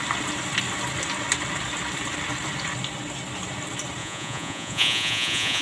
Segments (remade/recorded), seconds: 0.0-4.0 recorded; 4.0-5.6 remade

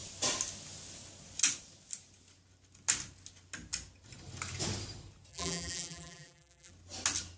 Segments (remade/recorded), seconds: 0.0-5.3 recorded; 5.3-6.7 remade; 6.7-7.4 recorded

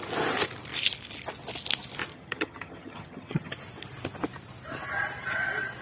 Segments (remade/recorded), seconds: 0.0-2.1 recorded; 2.1-3.5 remade; 3.5-5.8 recorded